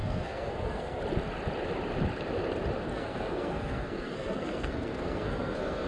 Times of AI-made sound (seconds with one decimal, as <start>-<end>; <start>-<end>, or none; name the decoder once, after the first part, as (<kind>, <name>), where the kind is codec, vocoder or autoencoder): 0.0-1.0 (codec, SNAC); 2.9-5.9